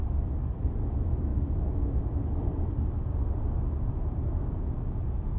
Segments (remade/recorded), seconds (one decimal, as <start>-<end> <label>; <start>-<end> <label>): 0.0-0.7 remade; 0.7-5.4 recorded